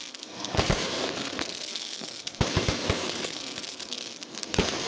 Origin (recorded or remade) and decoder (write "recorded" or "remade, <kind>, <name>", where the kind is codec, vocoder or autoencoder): remade, codec, SNAC